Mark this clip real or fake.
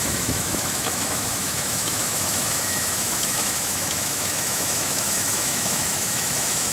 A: fake